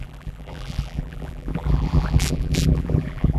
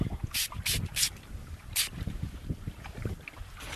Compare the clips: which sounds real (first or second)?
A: second